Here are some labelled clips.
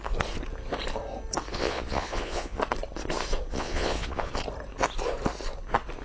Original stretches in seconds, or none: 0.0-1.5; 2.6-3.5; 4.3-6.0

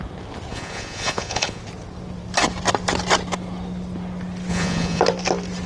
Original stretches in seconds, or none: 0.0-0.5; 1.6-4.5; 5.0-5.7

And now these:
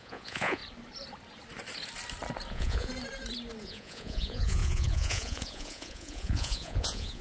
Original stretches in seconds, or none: 0.6-2.5; 2.9-3.6

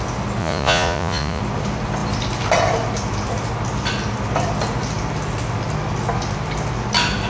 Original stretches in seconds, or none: 0.0-0.4; 1.4-7.3

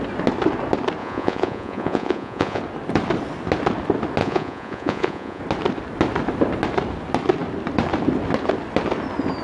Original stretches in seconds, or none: 0.0-1.0; 2.6-4.2; 5.4-9.4